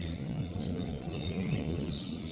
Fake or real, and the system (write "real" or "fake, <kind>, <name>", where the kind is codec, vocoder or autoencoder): fake, vocoder, Vocos